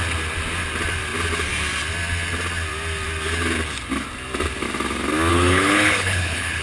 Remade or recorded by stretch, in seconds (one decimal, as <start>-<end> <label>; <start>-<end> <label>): 0.0-5.3 recorded; 5.3-6.6 remade